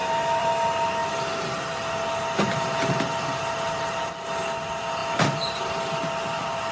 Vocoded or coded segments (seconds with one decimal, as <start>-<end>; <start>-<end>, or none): 0.0-0.5; 5.0-5.6